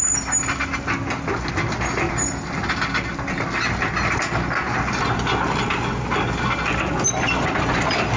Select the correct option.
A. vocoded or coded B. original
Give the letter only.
B